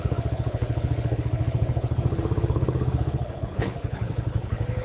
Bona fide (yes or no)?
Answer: no